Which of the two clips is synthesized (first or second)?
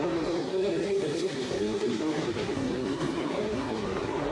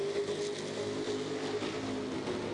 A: first